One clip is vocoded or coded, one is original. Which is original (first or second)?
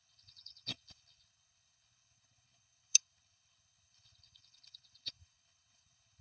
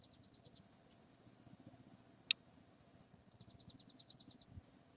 second